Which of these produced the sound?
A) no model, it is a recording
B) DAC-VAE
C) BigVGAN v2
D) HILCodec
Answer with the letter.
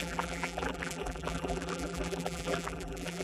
C